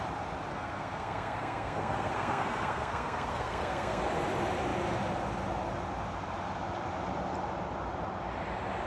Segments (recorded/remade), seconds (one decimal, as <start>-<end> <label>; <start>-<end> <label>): 0.0-0.5 recorded; 0.5-4.0 remade; 4.0-8.9 recorded